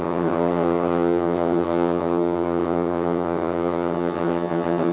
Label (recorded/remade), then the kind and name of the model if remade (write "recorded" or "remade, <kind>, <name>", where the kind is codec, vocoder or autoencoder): remade, vocoder, HiFi-GAN